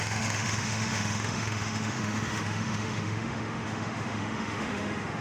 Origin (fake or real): fake